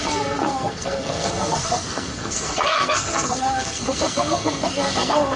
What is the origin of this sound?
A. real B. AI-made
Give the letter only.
B